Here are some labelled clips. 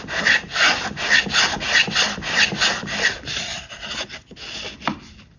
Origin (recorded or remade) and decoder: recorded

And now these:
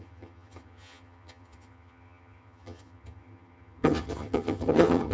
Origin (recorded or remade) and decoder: remade, vocoder, HiFi-GAN